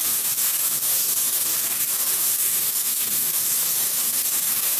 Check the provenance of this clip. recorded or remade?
remade